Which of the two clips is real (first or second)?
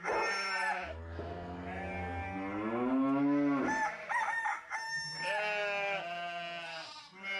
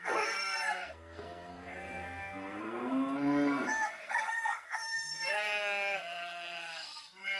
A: first